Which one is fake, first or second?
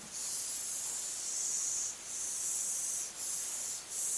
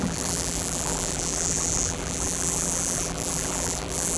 second